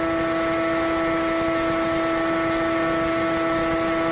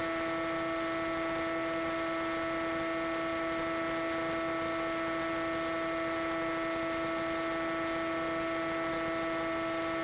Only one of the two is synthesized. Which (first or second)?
first